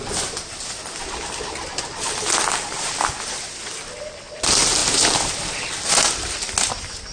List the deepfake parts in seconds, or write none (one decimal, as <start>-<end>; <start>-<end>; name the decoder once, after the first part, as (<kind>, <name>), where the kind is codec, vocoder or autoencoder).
none